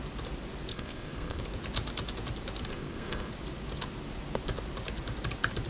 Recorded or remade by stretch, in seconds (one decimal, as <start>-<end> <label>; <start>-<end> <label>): 0.0-0.7 recorded; 0.7-1.4 remade; 1.4-2.7 recorded; 2.7-3.3 remade; 3.3-5.7 recorded